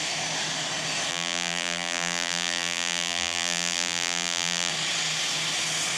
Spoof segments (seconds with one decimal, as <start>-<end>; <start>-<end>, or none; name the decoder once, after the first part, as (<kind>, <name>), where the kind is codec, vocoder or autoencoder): 1.1-4.7 (vocoder, BigVGAN v2)